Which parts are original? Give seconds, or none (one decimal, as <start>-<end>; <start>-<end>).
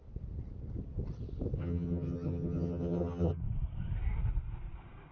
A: 0.0-1.6; 3.4-5.1